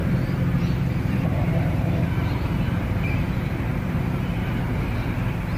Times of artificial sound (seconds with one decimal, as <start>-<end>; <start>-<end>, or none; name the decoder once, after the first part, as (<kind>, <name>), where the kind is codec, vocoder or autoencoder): 0.0-0.8 (vocoder, BigVGAN v2); 1.3-4.7